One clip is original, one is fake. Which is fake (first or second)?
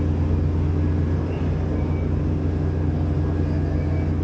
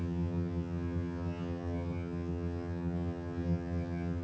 second